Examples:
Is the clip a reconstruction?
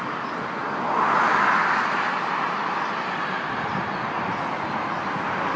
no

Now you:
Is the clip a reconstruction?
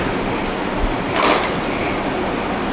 no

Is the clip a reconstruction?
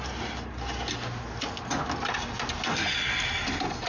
no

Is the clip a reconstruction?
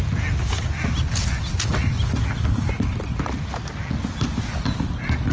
no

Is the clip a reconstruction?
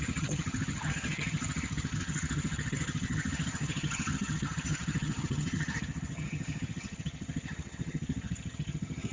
yes